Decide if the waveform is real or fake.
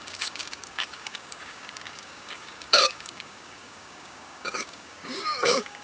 fake